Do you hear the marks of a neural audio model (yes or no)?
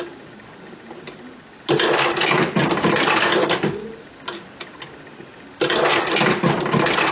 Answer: no